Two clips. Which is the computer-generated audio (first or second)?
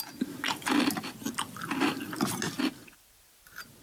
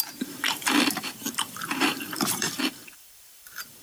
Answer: second